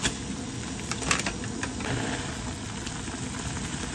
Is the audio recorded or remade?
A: recorded